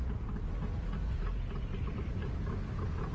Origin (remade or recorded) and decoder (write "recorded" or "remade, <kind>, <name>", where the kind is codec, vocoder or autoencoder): recorded